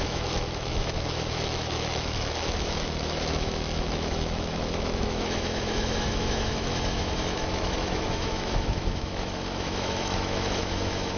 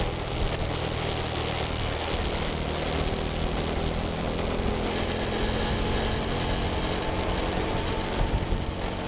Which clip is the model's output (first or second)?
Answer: first